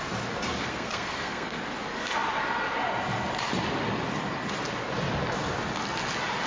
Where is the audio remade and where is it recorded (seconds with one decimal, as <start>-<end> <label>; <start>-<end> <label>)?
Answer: 0.0-0.4 recorded; 0.4-1.6 remade; 1.6-6.5 recorded